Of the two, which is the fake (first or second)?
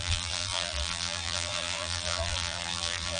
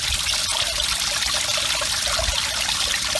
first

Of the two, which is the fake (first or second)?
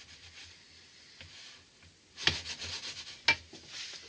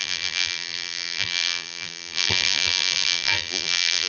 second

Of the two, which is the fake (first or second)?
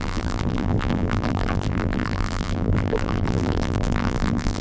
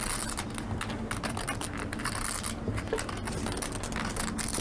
first